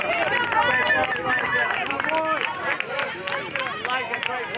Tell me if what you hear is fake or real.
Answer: real